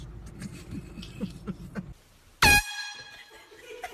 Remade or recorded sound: recorded